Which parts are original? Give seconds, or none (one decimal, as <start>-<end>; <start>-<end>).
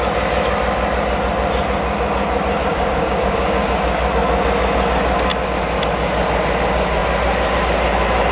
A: 0.0-2.7; 4.1-8.3